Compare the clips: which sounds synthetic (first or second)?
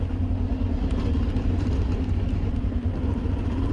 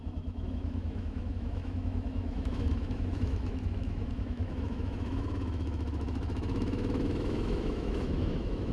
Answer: second